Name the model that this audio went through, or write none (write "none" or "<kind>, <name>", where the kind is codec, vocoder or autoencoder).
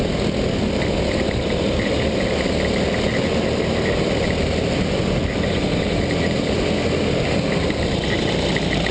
none